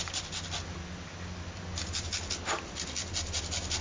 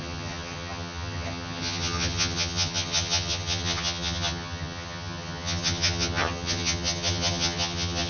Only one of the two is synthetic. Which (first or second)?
second